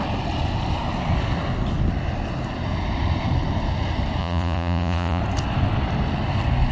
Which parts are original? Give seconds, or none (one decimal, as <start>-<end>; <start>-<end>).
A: 0.0-4.2; 5.2-6.7